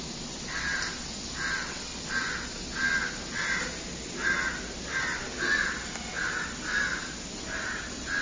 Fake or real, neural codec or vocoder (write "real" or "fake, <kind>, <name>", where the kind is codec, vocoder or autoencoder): real